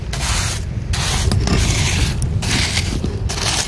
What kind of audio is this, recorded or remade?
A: recorded